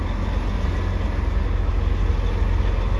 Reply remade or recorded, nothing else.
recorded